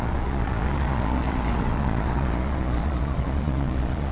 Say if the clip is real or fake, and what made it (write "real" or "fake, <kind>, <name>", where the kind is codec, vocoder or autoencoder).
fake, vocoder, Vocos